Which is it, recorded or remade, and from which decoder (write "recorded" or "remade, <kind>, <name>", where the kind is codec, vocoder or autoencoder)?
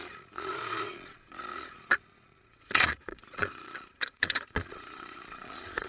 remade, vocoder, Vocos